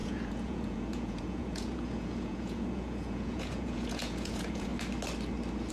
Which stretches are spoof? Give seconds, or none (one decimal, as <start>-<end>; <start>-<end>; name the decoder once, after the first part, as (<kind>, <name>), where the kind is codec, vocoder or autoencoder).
0.0-4.7 (vocoder, Vocos)